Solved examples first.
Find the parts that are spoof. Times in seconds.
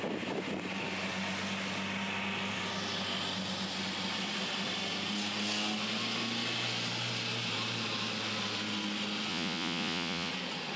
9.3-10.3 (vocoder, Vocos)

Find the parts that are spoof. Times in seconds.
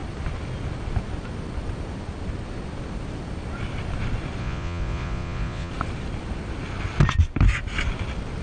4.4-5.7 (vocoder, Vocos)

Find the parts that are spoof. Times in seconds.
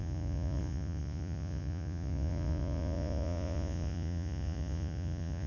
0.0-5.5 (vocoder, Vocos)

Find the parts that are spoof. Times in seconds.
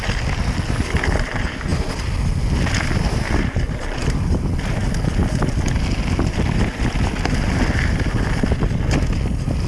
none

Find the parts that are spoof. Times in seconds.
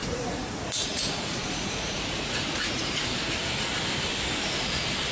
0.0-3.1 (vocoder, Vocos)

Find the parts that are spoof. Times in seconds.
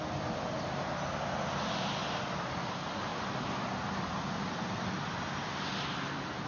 none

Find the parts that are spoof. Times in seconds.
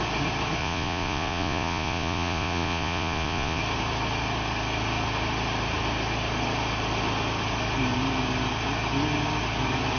0.6-3.6 (vocoder, Vocos)